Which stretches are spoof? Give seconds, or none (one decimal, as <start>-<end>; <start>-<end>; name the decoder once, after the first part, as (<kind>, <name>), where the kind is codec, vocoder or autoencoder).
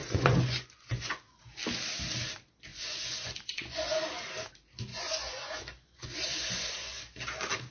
0.0-1.4 (vocoder, Vocos); 2.7-4.0; 4.9-7.0